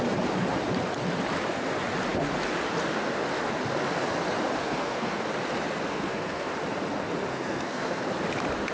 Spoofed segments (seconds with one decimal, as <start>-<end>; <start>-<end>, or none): 4.6-5.2; 5.9-6.5; 7.3-8.0